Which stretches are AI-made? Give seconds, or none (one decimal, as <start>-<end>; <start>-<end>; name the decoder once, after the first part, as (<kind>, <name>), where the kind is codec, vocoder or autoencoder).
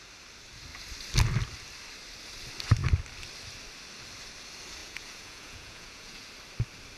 4.8-6.3 (vocoder, Vocos)